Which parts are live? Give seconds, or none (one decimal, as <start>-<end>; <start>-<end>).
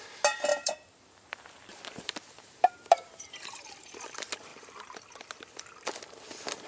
0.0-0.5; 3.8-4.5; 5.1-6.7